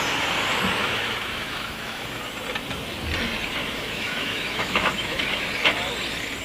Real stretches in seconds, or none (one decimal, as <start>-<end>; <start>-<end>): 0.0-0.8; 2.2-3.6; 5.2-6.4